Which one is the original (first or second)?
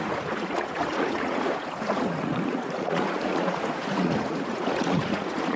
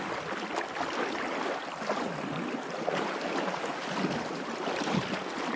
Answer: second